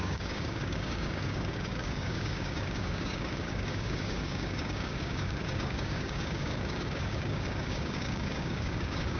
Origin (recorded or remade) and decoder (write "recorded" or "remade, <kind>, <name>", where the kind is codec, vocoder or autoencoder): remade, codec, DAC